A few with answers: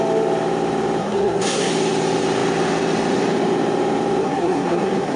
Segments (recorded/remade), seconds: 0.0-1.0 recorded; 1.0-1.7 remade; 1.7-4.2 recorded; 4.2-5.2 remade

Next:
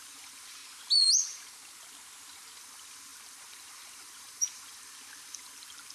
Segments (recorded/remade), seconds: 0.0-0.6 remade; 0.6-2.6 recorded; 2.6-5.9 remade

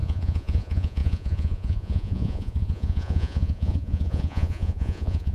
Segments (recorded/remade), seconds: 0.0-5.3 remade

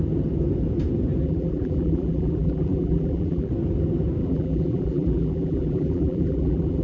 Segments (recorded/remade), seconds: 0.0-1.2 recorded; 1.2-3.5 remade; 3.5-4.2 recorded; 4.2-6.8 remade

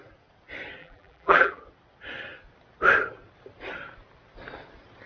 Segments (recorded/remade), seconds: 0.0-0.8 recorded; 0.8-1.6 remade; 1.6-5.1 recorded

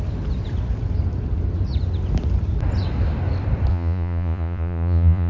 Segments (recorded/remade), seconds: 0.0-3.7 recorded; 3.7-5.3 remade

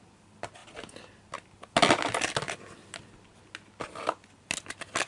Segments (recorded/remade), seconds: 0.0-5.1 recorded